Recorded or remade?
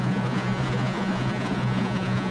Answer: remade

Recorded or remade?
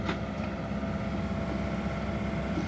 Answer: recorded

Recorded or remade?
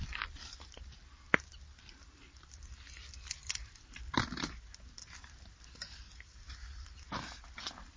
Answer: recorded